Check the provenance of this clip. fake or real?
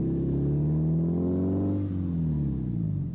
real